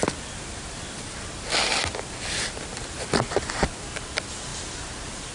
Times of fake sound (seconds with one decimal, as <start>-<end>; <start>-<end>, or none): none